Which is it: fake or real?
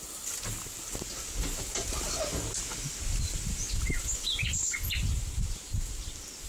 real